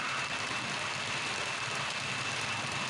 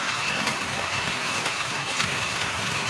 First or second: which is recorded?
first